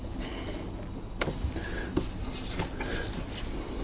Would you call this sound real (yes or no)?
yes